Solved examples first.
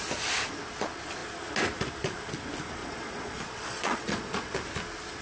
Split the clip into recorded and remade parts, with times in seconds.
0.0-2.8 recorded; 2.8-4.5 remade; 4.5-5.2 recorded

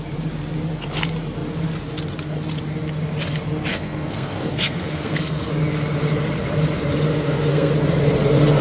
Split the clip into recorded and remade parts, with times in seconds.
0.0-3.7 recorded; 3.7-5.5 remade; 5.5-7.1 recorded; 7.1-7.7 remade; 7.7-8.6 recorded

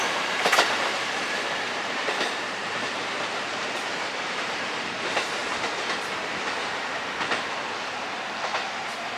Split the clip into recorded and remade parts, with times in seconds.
0.0-5.4 remade; 5.4-8.6 recorded; 8.6-9.2 remade

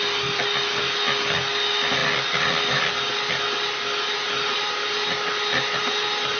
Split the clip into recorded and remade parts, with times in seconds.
0.0-6.4 recorded

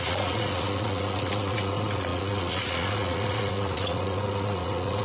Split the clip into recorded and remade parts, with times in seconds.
0.0-5.0 remade